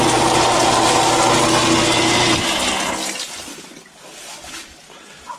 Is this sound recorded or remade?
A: recorded